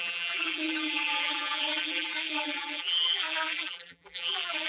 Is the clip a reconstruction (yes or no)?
yes